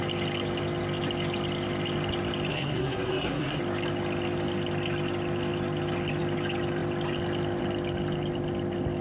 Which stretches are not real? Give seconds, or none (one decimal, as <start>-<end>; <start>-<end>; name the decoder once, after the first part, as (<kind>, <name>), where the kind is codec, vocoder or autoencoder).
2.5-3.6 (codec, SNAC)

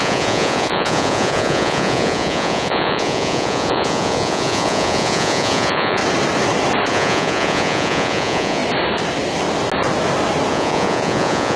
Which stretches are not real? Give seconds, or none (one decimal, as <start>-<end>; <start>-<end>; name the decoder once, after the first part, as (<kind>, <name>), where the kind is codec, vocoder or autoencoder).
0.0-6.0 (vocoder, Vocos); 6.9-8.6; 10.5-11.6

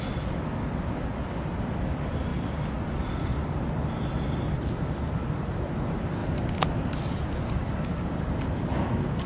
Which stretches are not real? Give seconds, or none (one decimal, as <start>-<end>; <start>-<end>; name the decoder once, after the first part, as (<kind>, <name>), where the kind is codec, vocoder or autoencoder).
none

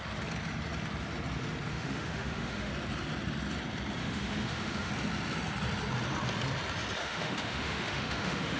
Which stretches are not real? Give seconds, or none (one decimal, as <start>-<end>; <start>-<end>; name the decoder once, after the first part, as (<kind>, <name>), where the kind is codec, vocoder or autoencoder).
1.7-2.7 (autoencoder, DAC-VAE); 4.0-4.9; 7.0-8.6

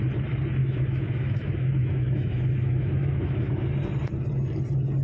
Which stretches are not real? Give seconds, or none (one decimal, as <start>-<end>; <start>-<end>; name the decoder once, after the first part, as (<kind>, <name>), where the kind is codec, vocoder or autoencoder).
0.6-3.6 (autoencoder, DAC-VAE)